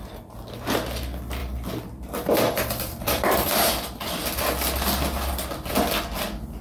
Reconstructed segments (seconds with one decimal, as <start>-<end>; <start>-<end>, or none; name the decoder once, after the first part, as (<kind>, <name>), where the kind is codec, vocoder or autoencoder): 1.4-4.4 (vocoder, BigVGAN v2)